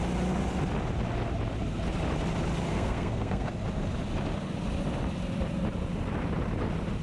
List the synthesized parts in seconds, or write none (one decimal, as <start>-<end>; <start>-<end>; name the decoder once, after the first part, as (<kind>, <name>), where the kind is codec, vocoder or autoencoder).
2.7-3.5 (codec, SNAC)